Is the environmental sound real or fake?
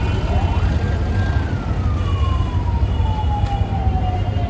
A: real